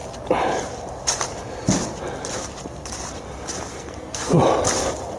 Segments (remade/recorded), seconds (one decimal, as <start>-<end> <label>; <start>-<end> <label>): 0.0-3.7 recorded; 3.7-4.4 remade; 4.4-5.2 recorded